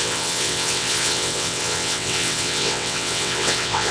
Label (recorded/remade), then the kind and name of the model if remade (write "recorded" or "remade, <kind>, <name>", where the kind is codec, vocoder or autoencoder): remade, vocoder, WaveNeXt